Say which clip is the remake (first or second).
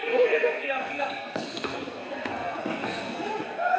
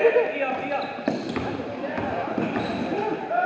first